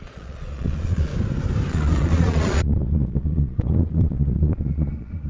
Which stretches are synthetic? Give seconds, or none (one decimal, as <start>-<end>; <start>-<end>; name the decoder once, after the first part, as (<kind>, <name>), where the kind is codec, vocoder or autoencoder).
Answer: 0.0-1.1 (vocoder, Vocos); 1.7-5.3